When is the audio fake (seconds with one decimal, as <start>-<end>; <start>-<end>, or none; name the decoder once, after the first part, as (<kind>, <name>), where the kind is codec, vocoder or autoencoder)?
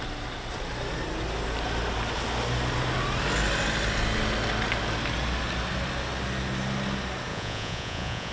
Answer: 7.3-8.3 (vocoder, Vocos)